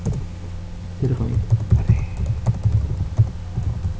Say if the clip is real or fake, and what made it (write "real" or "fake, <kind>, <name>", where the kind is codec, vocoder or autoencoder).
real